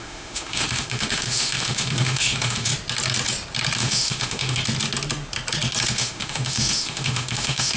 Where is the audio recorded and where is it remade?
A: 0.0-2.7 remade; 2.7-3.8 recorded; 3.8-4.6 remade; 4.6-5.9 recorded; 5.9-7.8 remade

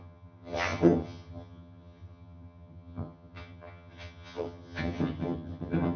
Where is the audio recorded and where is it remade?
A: 0.0-6.0 remade

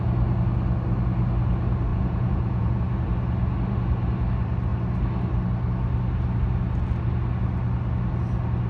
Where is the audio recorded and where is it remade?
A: 0.0-1.9 recorded; 1.9-2.8 remade; 2.8-8.7 recorded

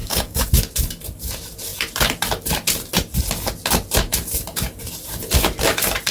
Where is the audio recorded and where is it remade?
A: 0.0-0.5 remade; 0.5-6.1 recorded